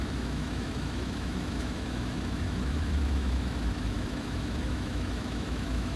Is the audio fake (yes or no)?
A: yes